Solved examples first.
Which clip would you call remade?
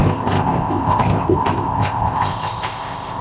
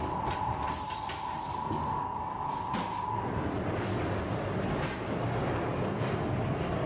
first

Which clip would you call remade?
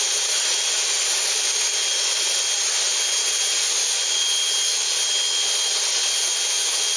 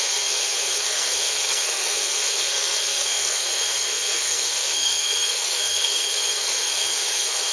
second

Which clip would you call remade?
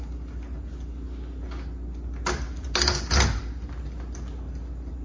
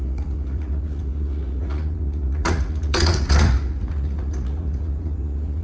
second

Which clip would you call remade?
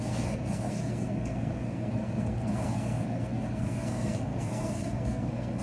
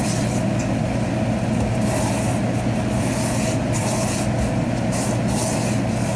first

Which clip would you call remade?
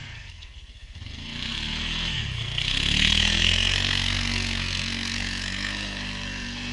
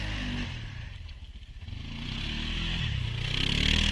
first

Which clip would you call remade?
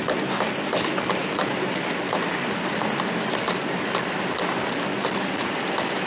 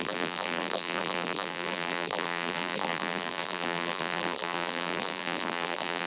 second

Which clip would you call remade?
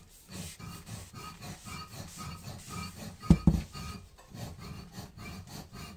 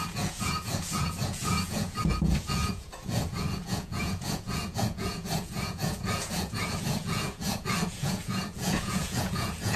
second